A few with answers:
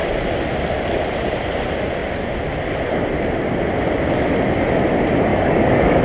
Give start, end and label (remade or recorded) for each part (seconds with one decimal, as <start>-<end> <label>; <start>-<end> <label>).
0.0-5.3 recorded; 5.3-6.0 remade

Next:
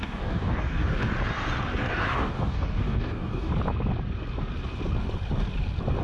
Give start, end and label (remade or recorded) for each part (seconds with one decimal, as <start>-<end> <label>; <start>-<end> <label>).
0.0-1.1 remade; 1.1-1.8 recorded; 1.8-3.5 remade; 3.5-6.0 recorded

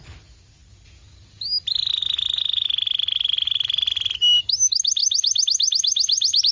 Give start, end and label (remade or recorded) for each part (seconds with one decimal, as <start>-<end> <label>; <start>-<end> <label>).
0.0-6.5 recorded